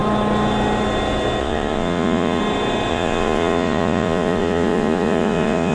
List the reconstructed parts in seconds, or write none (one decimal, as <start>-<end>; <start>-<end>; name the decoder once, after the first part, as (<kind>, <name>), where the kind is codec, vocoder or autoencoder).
1.4-2.4 (vocoder, Vocos); 2.9-5.7